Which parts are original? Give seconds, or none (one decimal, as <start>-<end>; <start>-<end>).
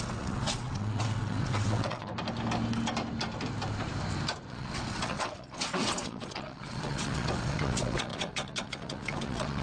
2.1-4.5